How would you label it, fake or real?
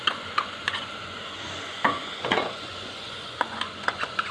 fake